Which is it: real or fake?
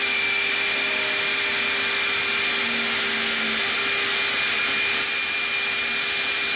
real